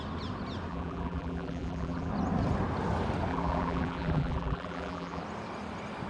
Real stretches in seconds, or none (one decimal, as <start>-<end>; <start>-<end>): 0.0-0.7; 2.1-3.3; 5.2-6.1